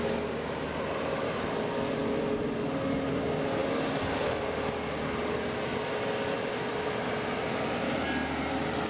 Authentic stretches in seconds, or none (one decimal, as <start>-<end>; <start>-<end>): 0.0-8.9

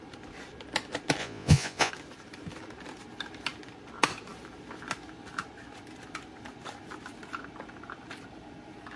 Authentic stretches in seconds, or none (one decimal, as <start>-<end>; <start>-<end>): 0.0-1.2; 1.9-9.0

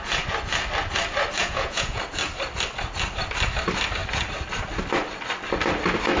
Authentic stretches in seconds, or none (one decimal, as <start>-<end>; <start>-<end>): 0.0-1.4; 2.0-6.2

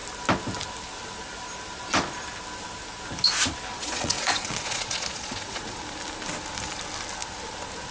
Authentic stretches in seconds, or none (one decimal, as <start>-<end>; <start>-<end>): 0.0-3.7; 5.8-7.9

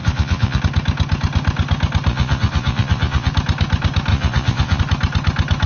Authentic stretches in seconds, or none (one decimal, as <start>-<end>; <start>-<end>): 0.6-2.1; 3.3-4.1; 4.8-5.7

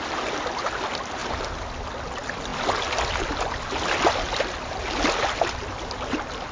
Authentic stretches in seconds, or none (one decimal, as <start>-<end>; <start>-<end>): 0.0-6.5

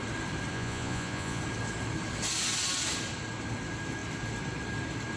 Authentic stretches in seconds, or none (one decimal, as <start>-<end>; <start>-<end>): 0.0-0.5; 1.4-5.2